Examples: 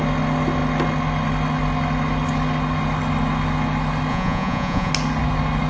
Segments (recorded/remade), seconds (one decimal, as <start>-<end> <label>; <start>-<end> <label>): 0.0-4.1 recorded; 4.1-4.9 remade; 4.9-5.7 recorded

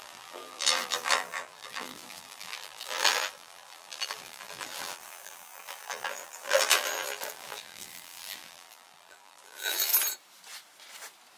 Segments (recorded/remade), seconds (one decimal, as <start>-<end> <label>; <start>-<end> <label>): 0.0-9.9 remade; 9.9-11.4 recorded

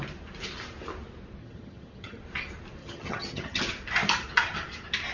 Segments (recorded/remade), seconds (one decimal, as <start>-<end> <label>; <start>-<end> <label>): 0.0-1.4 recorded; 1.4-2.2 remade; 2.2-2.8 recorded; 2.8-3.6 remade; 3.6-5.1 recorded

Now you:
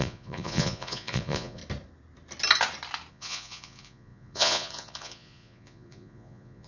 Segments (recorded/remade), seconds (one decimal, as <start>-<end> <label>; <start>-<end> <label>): 0.0-1.6 remade; 1.6-3.1 recorded; 3.1-6.7 remade